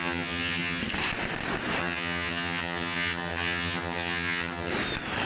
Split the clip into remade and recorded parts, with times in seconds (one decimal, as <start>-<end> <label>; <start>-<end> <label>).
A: 0.0-0.8 remade; 0.8-1.8 recorded; 1.8-4.7 remade; 4.7-5.3 recorded